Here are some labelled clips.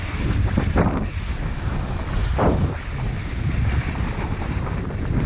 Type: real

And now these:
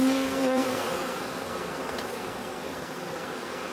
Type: fake